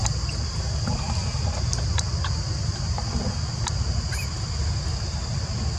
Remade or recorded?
recorded